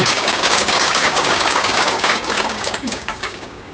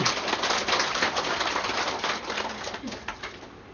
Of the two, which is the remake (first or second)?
first